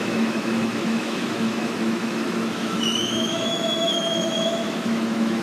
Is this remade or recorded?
remade